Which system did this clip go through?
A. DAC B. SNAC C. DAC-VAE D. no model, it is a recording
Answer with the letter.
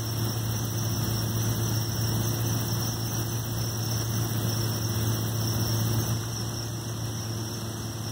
D